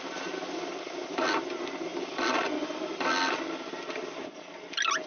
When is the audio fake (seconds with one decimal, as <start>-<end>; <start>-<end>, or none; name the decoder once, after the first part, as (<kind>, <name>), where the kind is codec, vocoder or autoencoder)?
none